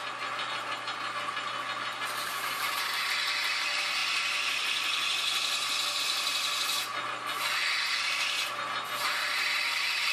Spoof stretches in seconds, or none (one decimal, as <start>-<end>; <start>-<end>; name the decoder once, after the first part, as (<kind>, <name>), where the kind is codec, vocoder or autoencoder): none